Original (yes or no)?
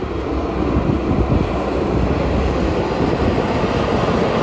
yes